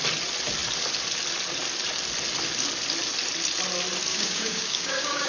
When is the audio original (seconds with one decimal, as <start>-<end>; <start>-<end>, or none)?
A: 0.0-4.1